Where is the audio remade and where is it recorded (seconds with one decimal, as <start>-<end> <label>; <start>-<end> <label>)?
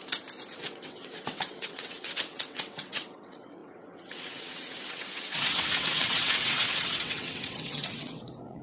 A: 0.0-0.5 recorded; 0.5-8.6 remade